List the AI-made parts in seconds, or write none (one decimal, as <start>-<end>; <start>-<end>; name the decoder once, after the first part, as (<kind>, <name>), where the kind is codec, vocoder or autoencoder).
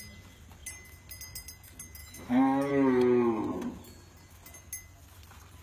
2.0-2.7 (autoencoder, DAC-VAE)